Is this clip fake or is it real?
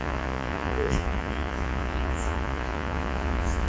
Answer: fake